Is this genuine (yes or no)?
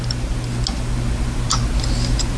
yes